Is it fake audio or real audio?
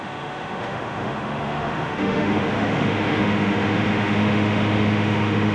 fake